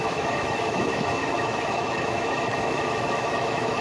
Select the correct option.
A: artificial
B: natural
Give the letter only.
A